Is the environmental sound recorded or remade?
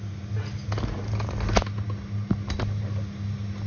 recorded